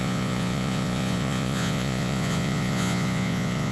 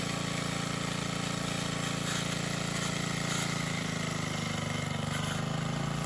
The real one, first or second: second